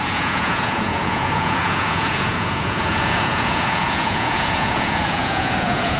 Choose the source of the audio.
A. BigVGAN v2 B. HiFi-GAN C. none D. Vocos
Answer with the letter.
D